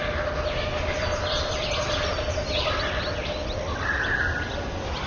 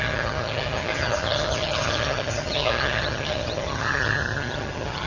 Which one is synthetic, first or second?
second